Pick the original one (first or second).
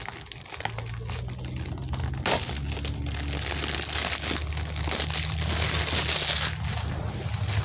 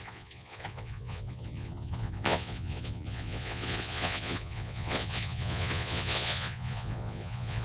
first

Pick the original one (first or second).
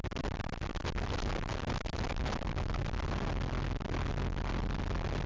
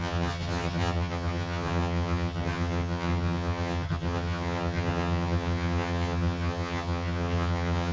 first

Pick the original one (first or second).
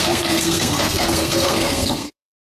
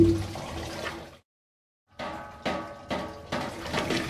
second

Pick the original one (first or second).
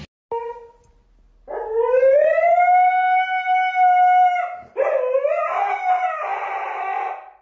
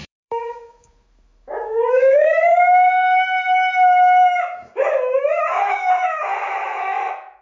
first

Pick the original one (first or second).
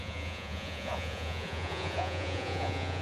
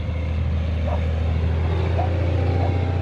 second